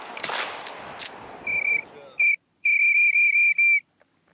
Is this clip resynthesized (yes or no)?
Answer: no